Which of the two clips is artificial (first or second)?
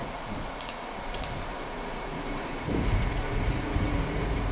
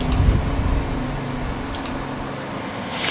first